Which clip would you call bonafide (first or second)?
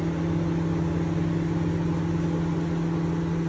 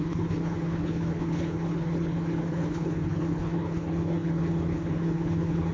first